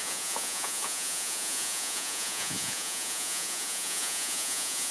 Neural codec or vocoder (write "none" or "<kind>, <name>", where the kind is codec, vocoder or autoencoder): vocoder, Vocos